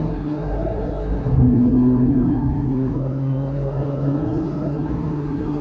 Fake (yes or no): yes